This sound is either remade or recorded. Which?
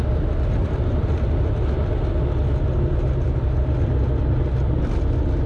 recorded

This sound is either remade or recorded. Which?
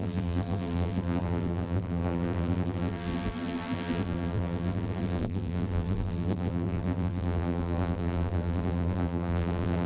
remade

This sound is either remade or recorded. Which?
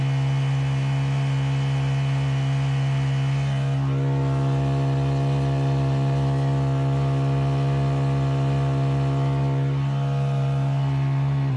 recorded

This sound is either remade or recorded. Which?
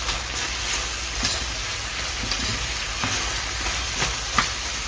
recorded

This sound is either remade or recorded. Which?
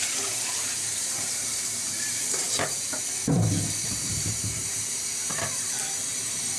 remade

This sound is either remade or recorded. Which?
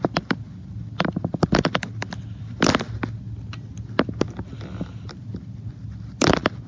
recorded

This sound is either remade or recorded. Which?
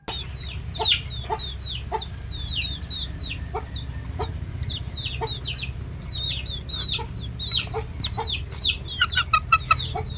recorded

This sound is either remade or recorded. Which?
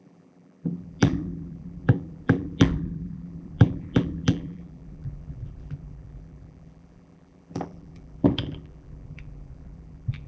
remade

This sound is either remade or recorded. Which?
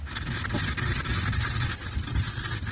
recorded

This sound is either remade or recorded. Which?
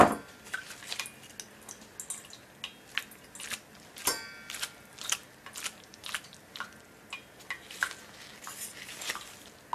recorded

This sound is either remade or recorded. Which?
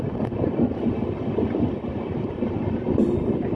recorded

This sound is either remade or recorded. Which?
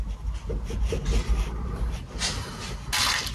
recorded